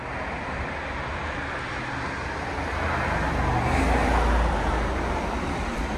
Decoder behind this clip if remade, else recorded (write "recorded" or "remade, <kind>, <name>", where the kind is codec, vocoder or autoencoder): recorded